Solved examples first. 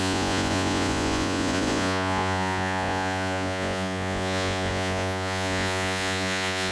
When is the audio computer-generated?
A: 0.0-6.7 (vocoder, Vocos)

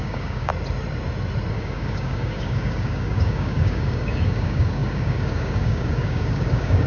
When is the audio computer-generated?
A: 0.0-0.5 (codec, DAC); 1.5-6.9

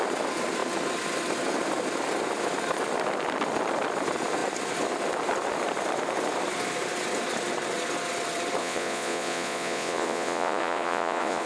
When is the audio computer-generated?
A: 8.6-11.5 (vocoder, Vocos)

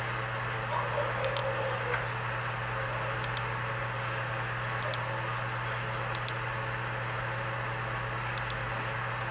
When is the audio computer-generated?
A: none

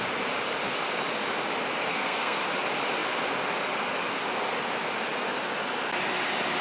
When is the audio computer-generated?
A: 1.9-2.4 (codec, SNAC)

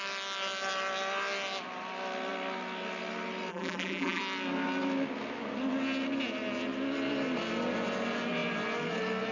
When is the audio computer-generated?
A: 3.5-4.2 (vocoder, BigVGAN v2)

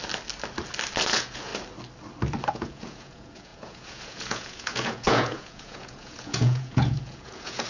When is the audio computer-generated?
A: 1.0-1.5 (vocoder, Vocos); 2.5-7.7